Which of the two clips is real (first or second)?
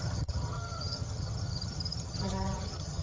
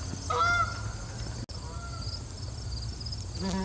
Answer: second